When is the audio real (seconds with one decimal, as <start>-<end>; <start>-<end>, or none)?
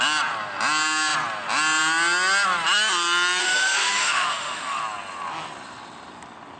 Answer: 0.0-3.4; 4.8-6.6